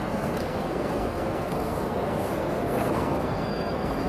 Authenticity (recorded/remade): remade